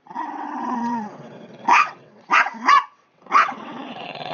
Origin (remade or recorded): remade